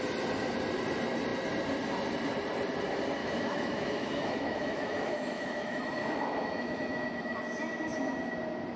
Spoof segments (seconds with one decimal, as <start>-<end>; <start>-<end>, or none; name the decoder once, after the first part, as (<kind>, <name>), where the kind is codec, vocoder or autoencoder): 3.2-7.4 (autoencoder, DAC-VAE)

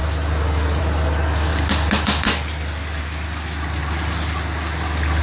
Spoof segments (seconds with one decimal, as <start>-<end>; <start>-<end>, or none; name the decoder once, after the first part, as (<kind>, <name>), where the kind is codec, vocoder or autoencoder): none

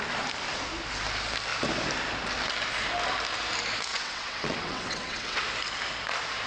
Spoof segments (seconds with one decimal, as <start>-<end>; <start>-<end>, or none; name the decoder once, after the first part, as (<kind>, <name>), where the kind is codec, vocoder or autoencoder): 3.9-5.4 (vocoder, WaveNeXt)

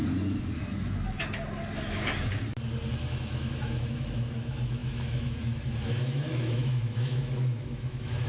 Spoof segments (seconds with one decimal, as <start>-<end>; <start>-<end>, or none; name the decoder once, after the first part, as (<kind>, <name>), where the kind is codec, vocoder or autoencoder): 2.9-8.3 (autoencoder, DAC-VAE)

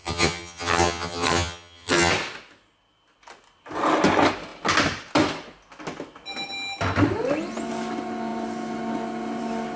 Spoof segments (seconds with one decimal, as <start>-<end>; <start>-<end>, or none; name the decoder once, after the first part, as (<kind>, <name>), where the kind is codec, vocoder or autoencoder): 0.0-2.1 (vocoder, HiFi-GAN)

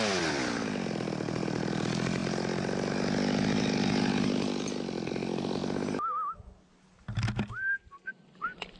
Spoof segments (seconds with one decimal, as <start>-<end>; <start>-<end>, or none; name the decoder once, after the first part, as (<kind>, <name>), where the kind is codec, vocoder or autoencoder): none